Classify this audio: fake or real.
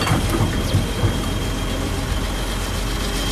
real